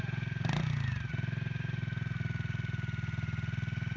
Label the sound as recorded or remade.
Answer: recorded